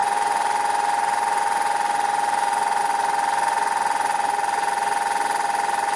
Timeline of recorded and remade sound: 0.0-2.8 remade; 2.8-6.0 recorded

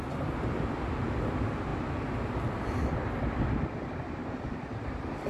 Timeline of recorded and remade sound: 0.0-4.2 recorded; 4.2-4.8 remade; 4.8-5.3 recorded

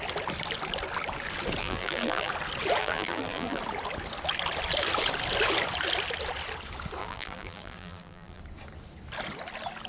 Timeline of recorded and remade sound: 0.0-1.6 recorded; 1.6-2.3 remade; 2.3-2.8 recorded; 2.8-3.6 remade; 3.6-7.0 recorded; 7.0-8.4 remade; 8.4-9.9 recorded

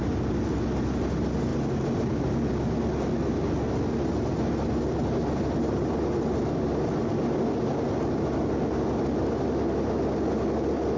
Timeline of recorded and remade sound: 0.0-11.0 recorded

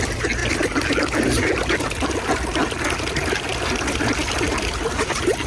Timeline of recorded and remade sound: 0.0-5.5 recorded